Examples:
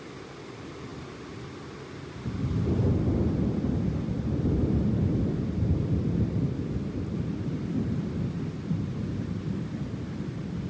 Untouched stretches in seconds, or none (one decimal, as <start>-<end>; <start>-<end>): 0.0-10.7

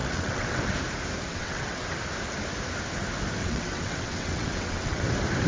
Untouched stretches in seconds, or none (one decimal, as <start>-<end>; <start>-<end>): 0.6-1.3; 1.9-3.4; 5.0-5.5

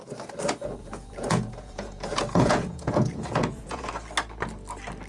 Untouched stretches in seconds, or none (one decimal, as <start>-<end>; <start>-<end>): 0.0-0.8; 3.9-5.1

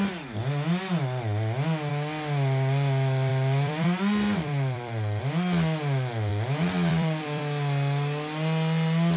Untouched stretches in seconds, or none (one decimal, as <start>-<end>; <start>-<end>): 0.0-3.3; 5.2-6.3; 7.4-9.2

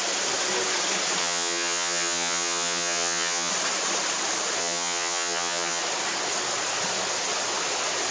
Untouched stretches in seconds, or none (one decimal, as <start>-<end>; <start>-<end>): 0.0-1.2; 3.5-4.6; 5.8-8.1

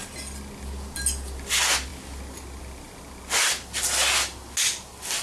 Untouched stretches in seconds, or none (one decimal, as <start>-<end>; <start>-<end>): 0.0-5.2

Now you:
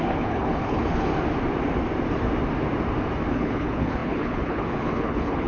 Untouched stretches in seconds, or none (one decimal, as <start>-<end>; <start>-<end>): 1.1-3.3

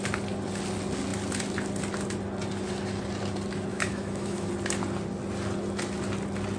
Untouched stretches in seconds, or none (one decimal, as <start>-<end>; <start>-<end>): 0.0-3.7; 4.5-6.6